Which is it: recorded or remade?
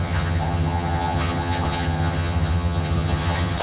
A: remade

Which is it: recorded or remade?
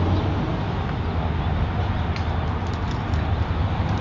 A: recorded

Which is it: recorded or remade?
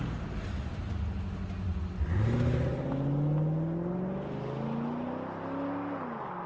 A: recorded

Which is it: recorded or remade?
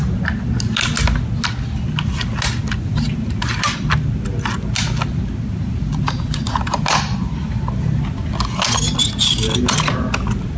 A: recorded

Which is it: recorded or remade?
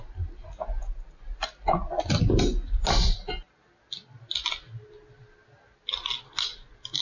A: recorded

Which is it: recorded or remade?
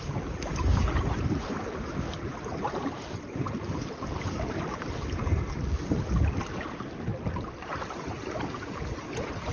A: recorded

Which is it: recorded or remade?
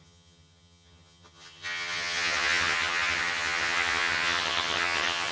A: remade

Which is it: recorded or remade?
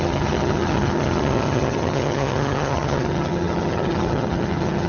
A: remade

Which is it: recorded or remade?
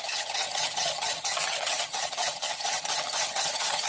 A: remade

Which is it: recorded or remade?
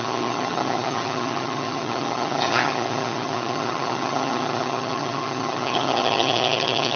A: remade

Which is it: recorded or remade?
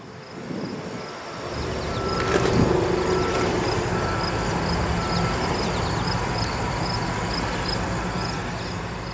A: recorded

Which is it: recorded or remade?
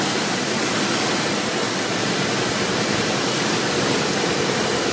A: recorded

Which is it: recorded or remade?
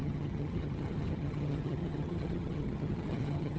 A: remade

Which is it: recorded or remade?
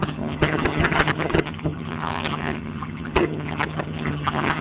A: remade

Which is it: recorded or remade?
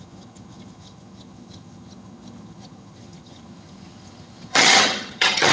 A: remade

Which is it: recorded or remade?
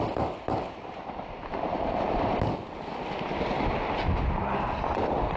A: recorded